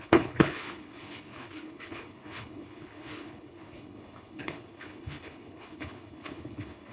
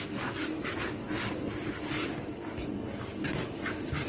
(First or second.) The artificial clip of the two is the first